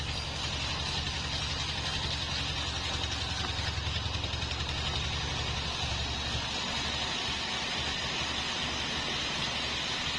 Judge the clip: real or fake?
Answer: real